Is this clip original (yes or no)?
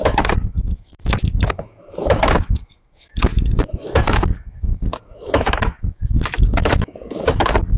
no